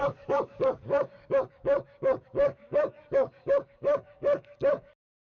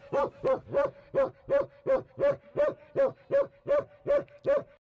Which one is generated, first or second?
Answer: first